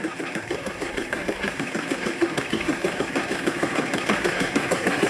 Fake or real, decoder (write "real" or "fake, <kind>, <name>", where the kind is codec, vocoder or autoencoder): fake, codec, SNAC